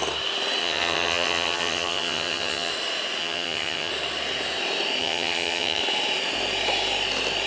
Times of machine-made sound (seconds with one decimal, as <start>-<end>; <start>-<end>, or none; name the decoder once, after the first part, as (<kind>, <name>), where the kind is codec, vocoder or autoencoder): 0.6-2.7 (vocoder, HiFi-GAN); 3.2-3.9; 5.0-5.8